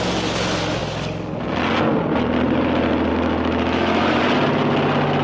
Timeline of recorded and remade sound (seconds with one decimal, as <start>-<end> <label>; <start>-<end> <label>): 0.0-3.1 recorded; 3.1-4.2 remade; 4.2-5.2 recorded